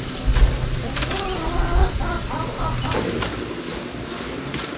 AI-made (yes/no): no